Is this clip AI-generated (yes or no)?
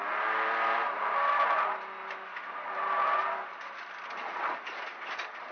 no